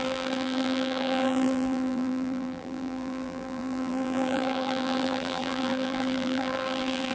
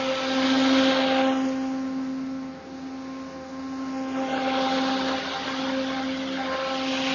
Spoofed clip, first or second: first